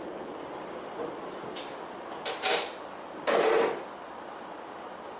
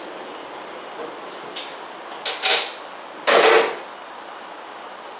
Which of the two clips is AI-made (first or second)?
first